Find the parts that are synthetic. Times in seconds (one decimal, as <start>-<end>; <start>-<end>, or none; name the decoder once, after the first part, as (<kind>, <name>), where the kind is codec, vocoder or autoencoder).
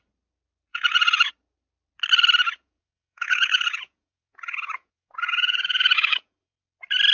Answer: 0.7-1.3 (vocoder, Vocos); 2.4-6.6